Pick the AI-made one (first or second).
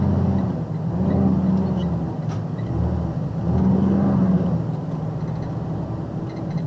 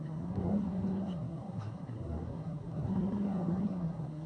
second